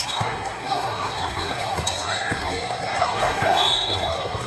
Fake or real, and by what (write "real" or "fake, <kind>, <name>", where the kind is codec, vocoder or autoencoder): fake, codec, SNAC